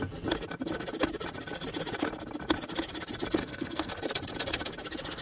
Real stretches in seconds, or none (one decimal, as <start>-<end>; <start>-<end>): 0.0-3.4; 3.9-5.2